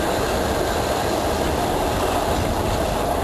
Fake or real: real